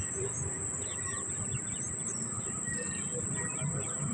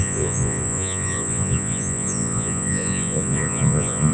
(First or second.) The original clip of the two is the first